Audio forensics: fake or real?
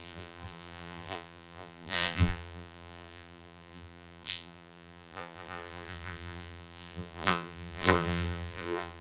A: fake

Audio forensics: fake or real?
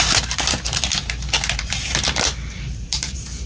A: fake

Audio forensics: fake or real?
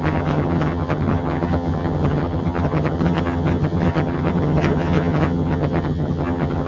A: fake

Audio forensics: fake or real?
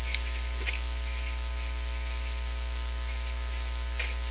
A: real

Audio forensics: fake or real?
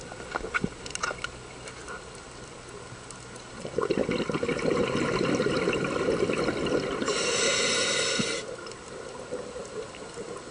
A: real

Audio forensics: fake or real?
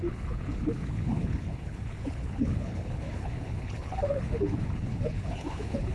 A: fake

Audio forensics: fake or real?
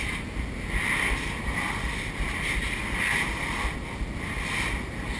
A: real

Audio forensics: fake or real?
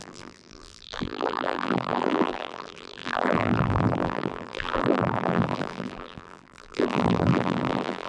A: fake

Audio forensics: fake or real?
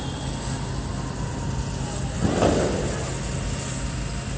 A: real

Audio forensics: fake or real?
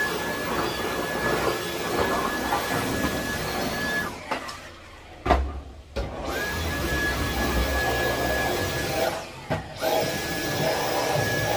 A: real